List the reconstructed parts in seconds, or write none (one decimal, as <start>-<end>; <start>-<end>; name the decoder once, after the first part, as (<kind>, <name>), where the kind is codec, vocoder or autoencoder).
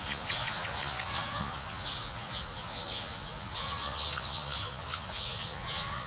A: 0.0-6.1 (vocoder, Vocos)